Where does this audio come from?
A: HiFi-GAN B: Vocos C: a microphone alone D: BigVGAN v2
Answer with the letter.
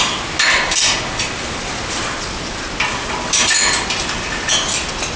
C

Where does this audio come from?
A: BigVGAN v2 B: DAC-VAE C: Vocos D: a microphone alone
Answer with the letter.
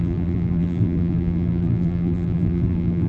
A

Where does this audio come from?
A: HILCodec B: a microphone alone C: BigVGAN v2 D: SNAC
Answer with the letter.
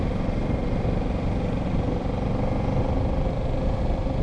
B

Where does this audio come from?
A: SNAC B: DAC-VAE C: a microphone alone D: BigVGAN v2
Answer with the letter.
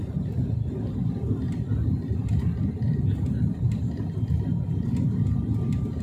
C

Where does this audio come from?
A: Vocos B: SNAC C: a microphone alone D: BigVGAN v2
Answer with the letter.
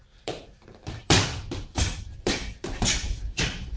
D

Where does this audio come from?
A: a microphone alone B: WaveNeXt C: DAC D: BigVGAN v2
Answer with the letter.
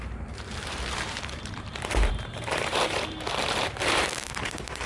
D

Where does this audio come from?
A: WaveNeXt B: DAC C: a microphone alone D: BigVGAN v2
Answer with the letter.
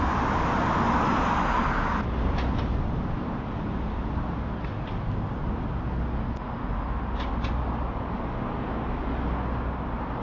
C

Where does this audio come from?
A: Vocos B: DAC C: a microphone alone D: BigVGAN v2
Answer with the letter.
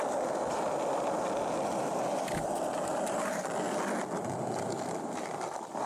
C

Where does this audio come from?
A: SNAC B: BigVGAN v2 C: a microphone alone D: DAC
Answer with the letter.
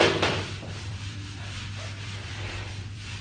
B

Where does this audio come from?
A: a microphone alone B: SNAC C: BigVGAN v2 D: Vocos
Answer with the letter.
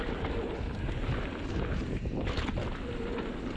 C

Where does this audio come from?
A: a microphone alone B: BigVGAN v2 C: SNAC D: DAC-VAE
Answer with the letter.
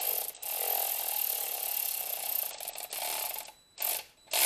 A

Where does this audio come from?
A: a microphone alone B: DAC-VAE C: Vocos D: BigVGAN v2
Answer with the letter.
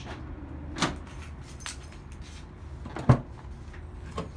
A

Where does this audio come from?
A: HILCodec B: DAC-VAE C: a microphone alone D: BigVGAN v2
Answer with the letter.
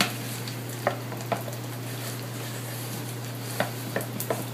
C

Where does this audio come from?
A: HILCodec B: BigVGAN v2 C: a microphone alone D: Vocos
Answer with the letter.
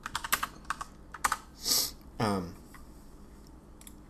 C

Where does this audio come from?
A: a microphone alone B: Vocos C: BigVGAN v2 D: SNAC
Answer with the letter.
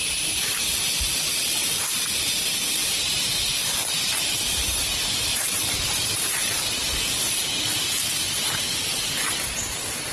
C